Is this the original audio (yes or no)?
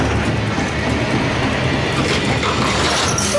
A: yes